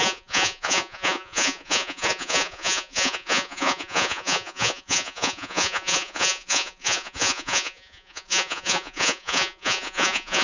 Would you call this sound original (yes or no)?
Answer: no